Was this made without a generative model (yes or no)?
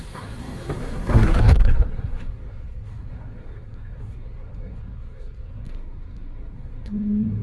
no